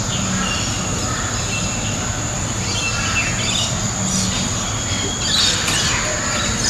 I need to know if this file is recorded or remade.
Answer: recorded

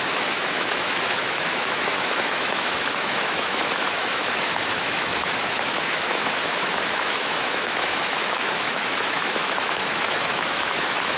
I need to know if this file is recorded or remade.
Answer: remade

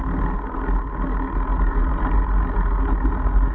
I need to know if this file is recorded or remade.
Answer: recorded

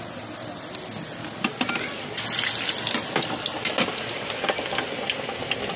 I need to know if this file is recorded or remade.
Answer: recorded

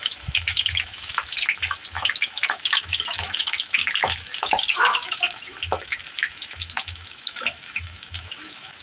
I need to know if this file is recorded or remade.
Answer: remade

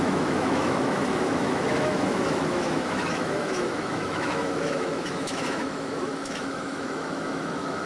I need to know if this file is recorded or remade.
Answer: remade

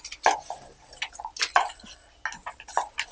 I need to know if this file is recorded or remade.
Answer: recorded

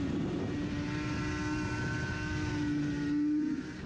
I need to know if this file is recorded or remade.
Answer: recorded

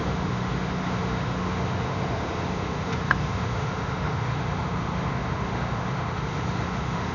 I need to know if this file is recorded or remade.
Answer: remade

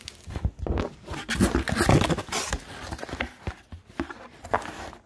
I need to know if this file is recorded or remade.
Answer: recorded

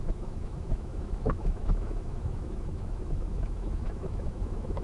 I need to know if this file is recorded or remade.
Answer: remade